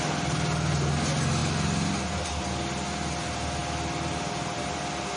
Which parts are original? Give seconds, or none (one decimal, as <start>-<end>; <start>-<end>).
0.0-5.2